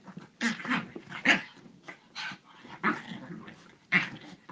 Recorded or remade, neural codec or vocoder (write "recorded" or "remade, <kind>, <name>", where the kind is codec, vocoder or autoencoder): recorded